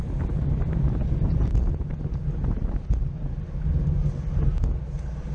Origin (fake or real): real